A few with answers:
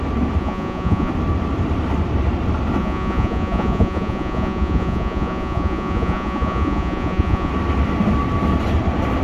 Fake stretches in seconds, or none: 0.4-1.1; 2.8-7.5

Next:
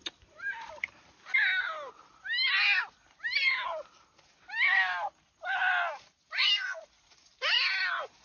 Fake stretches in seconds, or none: none

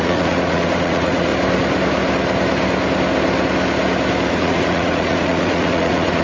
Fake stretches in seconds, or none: 0.0-1.3; 4.3-6.2

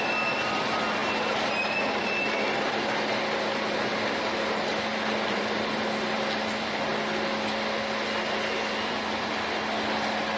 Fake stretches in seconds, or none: 1.0-5.6

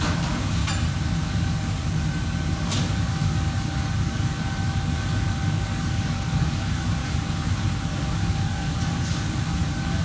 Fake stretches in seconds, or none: 0.0-0.6; 1.2-1.8; 2.5-10.0

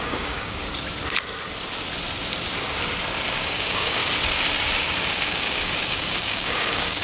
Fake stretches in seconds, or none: 0.0-0.6; 3.3-4.0; 4.8-7.0